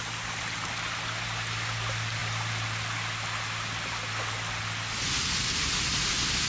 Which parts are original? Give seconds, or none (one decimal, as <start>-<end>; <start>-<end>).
0.0-6.5

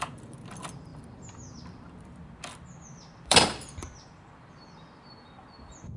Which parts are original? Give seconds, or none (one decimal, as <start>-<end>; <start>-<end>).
none

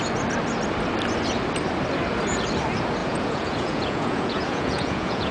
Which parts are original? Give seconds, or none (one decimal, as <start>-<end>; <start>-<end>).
0.0-3.0

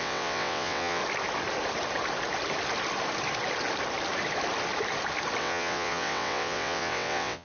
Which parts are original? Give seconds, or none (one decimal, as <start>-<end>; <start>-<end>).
1.0-5.4

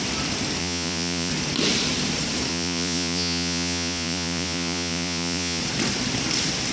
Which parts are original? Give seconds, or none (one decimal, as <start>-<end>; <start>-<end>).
0.0-0.6; 1.3-2.5; 5.6-6.7

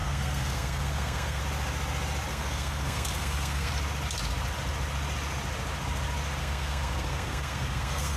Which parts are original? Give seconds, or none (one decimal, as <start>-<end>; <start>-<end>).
1.4-2.3; 3.7-6.4

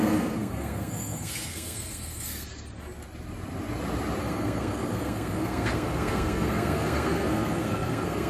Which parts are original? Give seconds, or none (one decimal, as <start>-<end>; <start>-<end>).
2.5-4.2

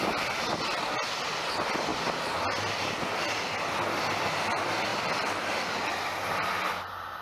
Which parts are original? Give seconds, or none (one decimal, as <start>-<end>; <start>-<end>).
0.0-7.2